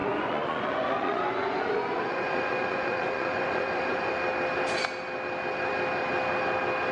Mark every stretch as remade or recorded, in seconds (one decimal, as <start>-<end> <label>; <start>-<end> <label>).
0.0-4.1 remade; 4.1-6.9 recorded